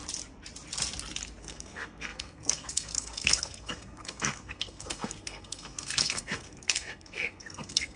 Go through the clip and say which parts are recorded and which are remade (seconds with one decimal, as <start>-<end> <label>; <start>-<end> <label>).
0.0-1.4 recorded; 1.4-8.0 remade